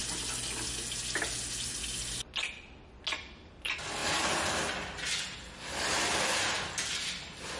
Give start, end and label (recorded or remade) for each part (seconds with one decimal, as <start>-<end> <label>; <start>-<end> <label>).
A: 0.0-7.6 recorded